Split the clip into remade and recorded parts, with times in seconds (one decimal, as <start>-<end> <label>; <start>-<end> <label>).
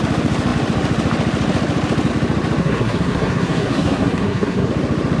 0.0-2.6 recorded; 2.6-4.7 remade; 4.7-5.2 recorded